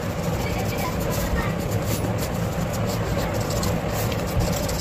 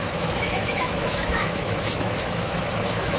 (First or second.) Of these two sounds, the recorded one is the first